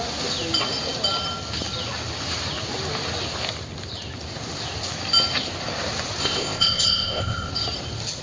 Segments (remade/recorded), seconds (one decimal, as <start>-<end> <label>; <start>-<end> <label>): 0.0-6.2 recorded; 6.2-7.5 remade; 7.5-8.2 recorded